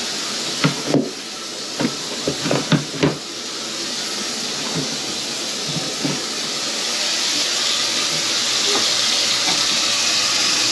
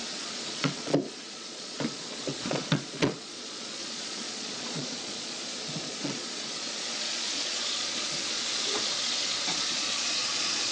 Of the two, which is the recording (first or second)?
first